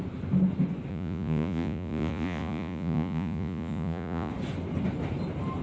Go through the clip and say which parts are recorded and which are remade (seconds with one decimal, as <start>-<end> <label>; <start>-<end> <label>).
0.0-0.9 recorded; 0.9-4.3 remade; 4.3-5.6 recorded